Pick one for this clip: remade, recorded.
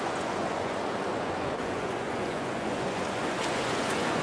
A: remade